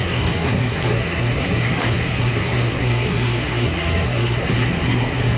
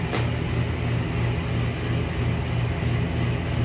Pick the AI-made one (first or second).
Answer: first